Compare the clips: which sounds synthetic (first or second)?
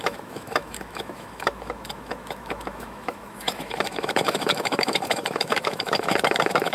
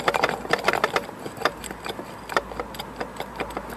first